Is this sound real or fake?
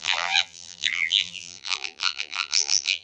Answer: fake